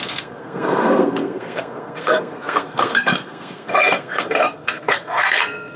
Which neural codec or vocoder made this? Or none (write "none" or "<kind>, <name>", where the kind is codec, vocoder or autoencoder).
codec, SNAC